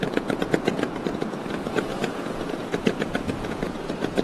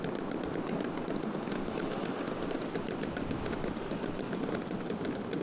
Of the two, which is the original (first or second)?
second